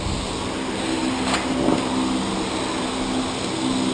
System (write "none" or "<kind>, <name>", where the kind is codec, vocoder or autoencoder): none